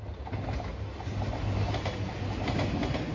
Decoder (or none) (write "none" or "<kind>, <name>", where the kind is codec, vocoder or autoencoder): none